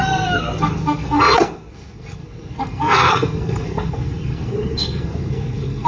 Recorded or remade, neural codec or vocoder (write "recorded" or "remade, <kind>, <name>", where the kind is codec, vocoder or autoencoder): remade, codec, SNAC